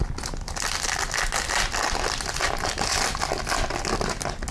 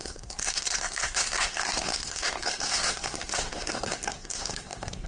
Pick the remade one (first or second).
second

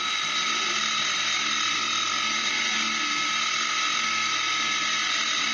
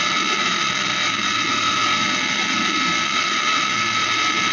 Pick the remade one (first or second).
second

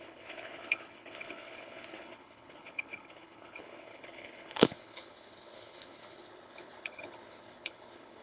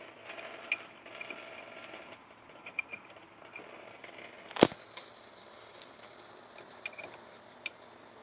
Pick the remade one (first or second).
first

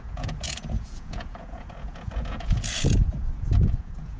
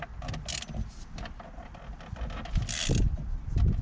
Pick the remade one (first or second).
first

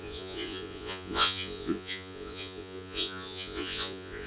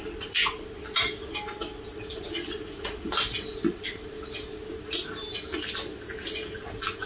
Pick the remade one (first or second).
first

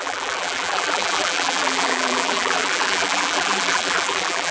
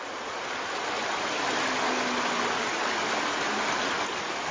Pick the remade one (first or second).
first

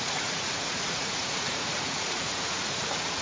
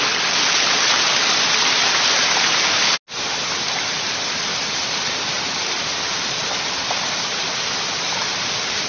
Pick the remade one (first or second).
first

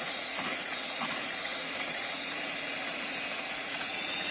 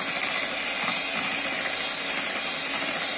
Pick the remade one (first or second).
first